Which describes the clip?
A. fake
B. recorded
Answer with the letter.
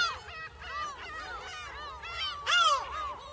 B